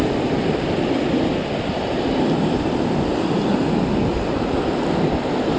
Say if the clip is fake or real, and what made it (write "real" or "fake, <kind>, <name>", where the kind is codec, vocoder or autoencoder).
real